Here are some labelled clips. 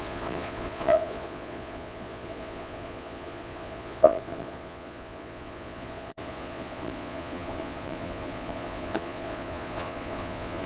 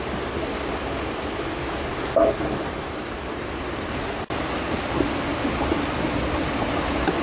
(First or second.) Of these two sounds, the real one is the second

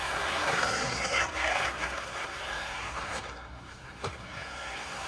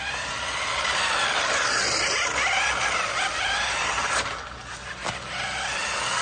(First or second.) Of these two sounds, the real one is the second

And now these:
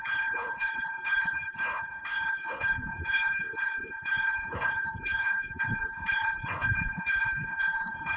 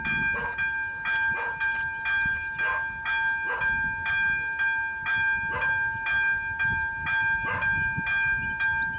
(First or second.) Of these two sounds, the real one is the second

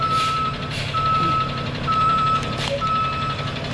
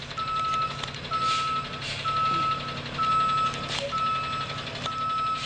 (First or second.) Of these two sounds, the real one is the second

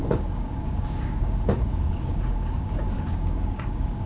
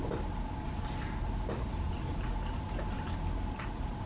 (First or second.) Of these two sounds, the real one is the second